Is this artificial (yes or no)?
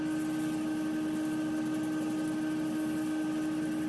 no